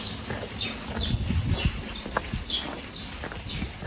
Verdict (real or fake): real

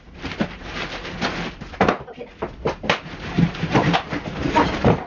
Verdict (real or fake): real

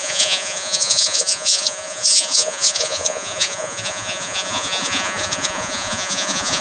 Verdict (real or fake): fake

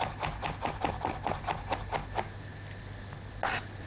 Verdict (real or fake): real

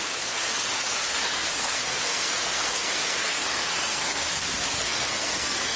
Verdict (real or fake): fake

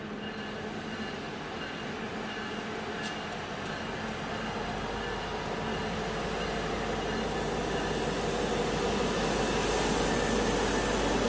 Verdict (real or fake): real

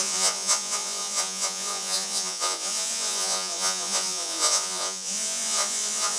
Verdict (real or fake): fake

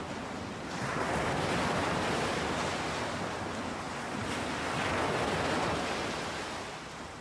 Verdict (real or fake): real